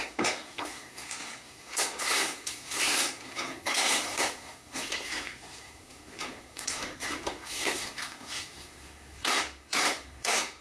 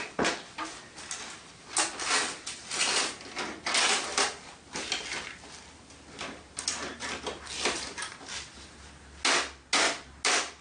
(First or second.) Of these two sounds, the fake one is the first